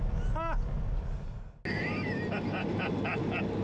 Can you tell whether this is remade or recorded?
recorded